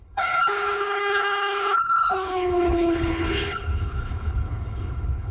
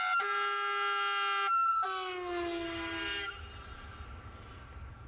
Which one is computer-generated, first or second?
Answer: first